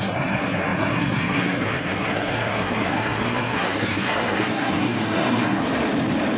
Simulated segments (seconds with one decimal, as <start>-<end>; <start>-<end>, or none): 0.0-5.6